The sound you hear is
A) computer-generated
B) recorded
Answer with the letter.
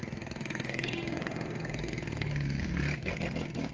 A